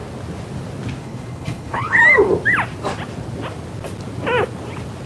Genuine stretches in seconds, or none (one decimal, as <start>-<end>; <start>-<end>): 0.0-1.0; 2.0-5.1

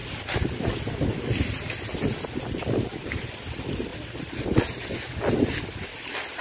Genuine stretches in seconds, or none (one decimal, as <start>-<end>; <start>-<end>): 0.0-6.4

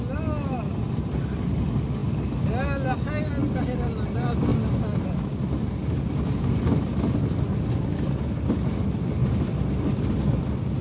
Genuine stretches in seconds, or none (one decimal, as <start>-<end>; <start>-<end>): 0.0-10.8

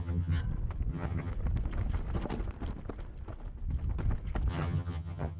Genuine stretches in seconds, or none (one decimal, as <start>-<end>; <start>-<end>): 0.4-0.9; 1.3-4.5

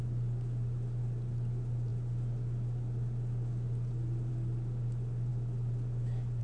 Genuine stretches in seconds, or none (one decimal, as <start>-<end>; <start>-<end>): 0.0-6.4

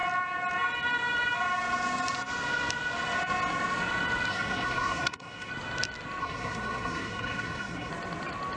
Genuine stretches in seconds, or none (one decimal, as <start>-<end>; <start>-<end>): 0.0-4.3; 5.5-6.2; 7.9-8.6